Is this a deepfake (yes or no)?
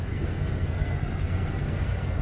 yes